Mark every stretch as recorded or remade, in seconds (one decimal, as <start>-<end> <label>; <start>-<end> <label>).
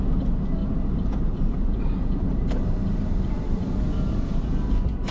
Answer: 0.0-0.6 recorded; 0.6-3.7 remade; 3.7-5.1 recorded